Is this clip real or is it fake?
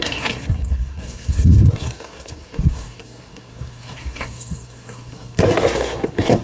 fake